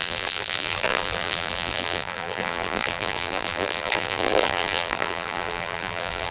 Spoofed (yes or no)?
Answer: yes